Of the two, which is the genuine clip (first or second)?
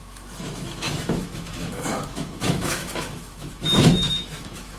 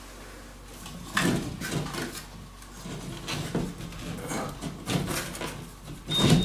second